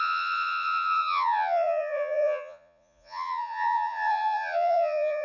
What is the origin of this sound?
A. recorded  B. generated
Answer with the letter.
B